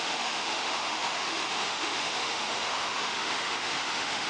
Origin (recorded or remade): remade